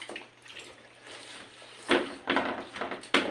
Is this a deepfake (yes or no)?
no